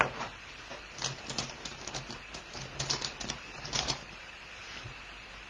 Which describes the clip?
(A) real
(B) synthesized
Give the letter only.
B